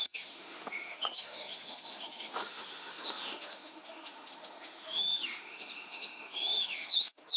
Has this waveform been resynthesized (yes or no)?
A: yes